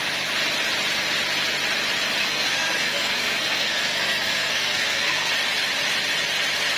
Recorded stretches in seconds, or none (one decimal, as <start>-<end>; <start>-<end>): 0.0-2.2; 5.3-6.8